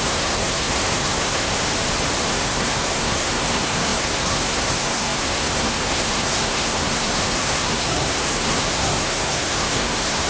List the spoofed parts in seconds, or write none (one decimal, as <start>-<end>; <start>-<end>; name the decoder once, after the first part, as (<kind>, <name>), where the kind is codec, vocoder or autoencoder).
0.0-1.5 (codec, SNAC); 2.3-10.3